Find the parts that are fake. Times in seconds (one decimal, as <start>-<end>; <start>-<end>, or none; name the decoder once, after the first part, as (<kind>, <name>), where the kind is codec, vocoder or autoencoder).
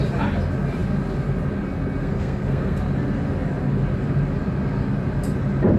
2.0-2.8 (codec, SNAC)